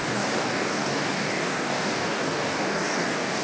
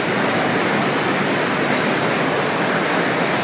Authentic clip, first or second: second